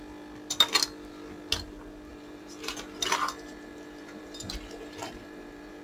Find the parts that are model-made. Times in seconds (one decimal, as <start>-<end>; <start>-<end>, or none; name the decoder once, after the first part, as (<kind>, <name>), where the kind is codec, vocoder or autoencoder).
2.1-2.7 (vocoder, BigVGAN v2); 3.2-5.8